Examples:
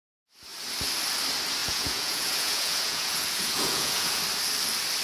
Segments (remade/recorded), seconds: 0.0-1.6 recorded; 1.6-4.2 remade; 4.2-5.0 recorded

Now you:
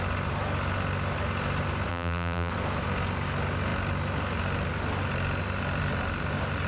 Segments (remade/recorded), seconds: 0.0-1.9 recorded; 1.9-2.5 remade; 2.5-6.7 recorded

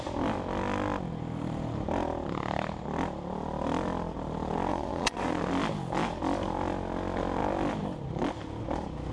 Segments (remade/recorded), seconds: 0.0-4.7 recorded; 4.7-5.3 remade; 5.3-9.1 recorded

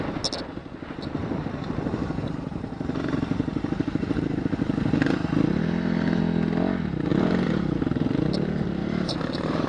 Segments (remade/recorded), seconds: 0.0-1.2 recorded; 1.2-6.2 remade; 6.2-7.1 recorded; 7.1-7.8 remade; 7.8-8.8 recorded; 8.8-9.7 remade

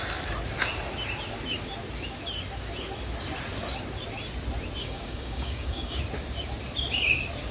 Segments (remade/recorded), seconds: 0.0-4.8 recorded; 4.8-6.0 remade; 6.0-7.5 recorded